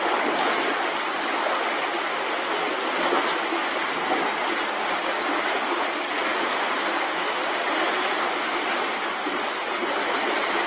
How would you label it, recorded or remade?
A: recorded